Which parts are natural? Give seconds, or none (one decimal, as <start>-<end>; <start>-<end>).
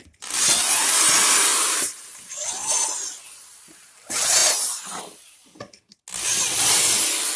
0.0-1.5; 2.3-7.4